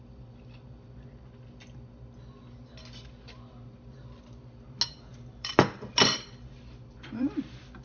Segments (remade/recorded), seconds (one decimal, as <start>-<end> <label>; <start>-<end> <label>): 0.0-5.1 recorded; 5.1-7.8 remade